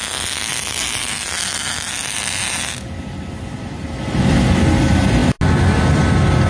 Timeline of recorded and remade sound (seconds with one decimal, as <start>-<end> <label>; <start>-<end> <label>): 0.0-6.5 recorded